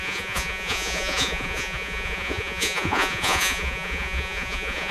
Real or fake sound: fake